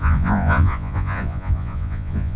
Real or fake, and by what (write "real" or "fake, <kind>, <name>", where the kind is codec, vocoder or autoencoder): fake, vocoder, Vocos